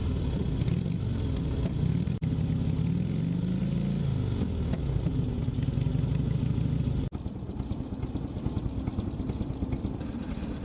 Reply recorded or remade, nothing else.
recorded